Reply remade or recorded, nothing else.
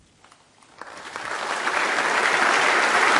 recorded